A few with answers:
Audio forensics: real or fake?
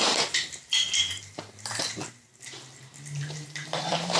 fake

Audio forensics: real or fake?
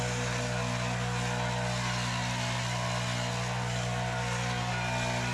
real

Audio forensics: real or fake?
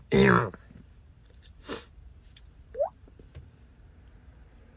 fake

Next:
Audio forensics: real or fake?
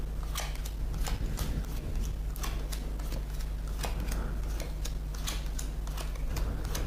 real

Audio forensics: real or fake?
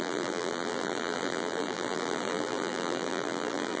fake